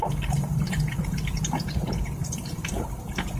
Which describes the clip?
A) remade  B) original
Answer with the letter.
A